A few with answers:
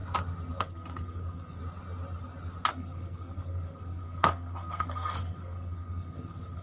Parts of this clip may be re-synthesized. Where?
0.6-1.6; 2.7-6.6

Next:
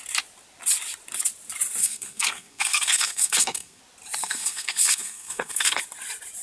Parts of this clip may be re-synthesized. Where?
1.8-3.8; 4.2-5.8

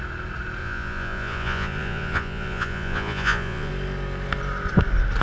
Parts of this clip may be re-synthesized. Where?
0.6-3.7

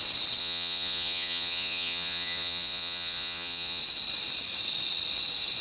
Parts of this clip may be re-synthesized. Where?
0.4-3.8

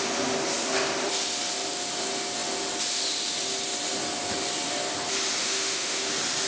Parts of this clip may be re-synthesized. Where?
5.4-6.1

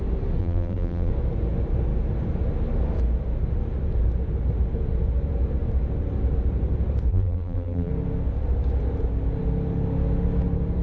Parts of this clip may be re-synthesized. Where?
0.4-1.1; 7.1-7.9

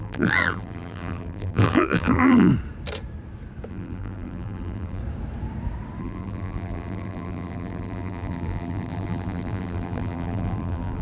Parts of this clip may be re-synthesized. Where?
0.0-2.5; 3.7-5.0; 6.0-11.0

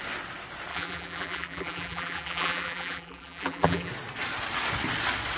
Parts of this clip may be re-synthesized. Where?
0.7-3.9